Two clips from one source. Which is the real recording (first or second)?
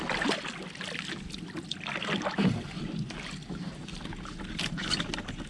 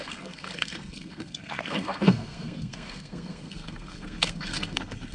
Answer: first